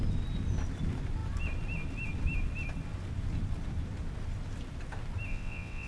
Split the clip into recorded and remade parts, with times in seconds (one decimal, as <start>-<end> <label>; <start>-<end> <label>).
0.0-5.3 recorded; 5.3-5.9 remade